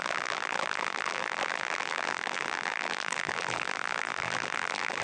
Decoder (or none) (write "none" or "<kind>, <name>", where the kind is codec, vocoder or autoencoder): vocoder, BigVGAN v2